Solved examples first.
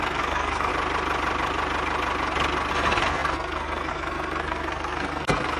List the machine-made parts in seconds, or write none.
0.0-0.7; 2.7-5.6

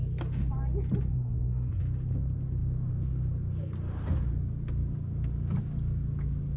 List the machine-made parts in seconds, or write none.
1.1-1.8